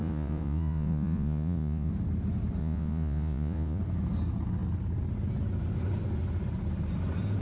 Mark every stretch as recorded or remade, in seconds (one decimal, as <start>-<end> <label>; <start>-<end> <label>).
0.0-1.9 remade; 1.9-2.6 recorded; 2.6-3.8 remade; 3.8-7.4 recorded